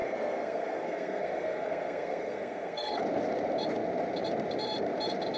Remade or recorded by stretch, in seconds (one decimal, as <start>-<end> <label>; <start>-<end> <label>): 0.0-3.0 remade; 3.0-5.4 recorded